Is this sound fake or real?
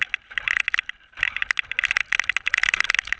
real